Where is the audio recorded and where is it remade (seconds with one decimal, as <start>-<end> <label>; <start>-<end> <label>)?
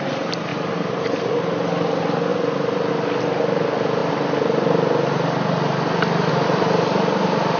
0.0-0.5 recorded; 0.5-1.3 remade; 1.3-7.6 recorded